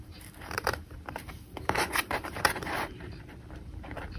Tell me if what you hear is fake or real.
fake